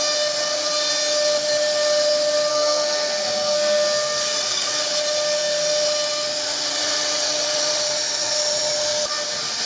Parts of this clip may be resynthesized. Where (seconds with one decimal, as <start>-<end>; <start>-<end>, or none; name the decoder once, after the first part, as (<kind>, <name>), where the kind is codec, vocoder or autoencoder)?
2.5-4.8 (codec, SNAC)